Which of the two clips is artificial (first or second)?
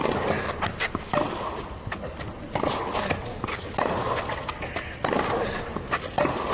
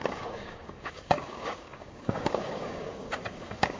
second